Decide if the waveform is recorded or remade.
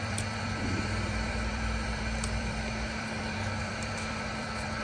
remade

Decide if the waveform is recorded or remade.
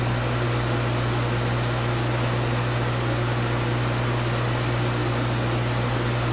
recorded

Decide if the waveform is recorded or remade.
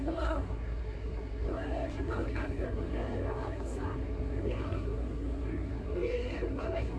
remade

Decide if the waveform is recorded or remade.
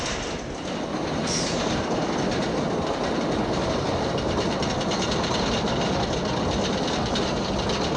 recorded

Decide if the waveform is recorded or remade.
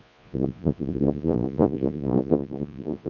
remade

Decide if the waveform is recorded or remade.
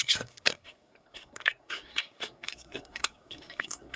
remade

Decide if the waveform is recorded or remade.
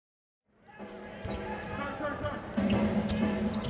recorded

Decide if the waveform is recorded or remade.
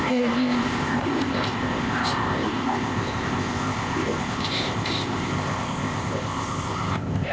remade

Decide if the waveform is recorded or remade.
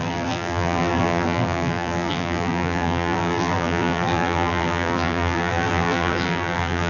remade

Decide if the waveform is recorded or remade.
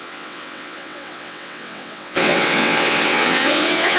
remade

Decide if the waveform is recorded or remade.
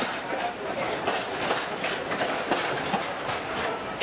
recorded